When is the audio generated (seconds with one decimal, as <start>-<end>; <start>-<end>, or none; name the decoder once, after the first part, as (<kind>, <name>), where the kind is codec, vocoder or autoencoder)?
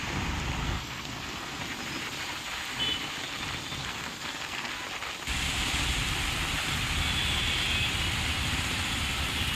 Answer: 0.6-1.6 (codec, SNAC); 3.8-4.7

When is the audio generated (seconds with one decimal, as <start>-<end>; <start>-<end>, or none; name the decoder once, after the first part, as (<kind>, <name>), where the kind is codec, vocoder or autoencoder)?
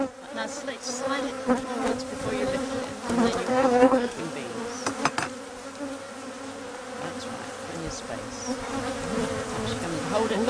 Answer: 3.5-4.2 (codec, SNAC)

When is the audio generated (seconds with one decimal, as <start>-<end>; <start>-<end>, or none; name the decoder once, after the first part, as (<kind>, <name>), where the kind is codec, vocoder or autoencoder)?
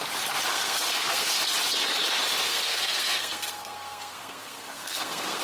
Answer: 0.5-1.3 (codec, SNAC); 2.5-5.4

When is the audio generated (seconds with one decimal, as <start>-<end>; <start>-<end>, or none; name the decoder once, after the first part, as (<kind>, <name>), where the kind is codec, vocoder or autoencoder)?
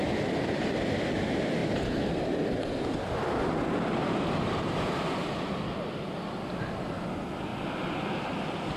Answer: none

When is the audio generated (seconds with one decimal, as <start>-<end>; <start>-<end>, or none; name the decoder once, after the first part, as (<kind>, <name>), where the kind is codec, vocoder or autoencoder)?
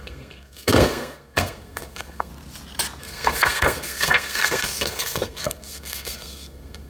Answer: 0.0-2.3 (codec, SNAC); 3.0-6.9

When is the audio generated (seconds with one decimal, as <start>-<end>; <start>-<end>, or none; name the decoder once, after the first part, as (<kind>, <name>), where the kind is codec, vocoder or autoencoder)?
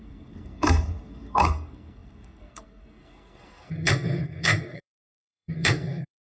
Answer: 0.0-6.3 (codec, SNAC)